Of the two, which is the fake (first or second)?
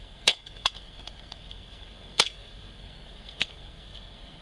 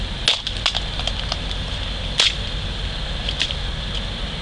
first